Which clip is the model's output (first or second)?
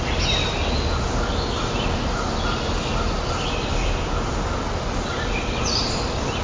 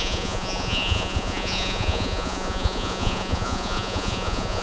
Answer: second